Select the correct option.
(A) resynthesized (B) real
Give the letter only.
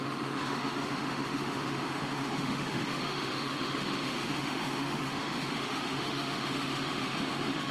A